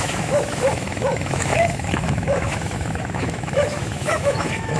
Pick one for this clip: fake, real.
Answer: fake